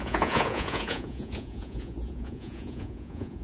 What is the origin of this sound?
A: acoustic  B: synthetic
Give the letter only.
B